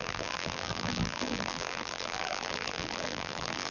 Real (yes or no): no